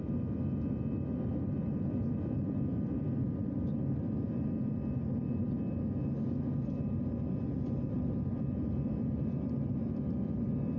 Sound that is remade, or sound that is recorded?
recorded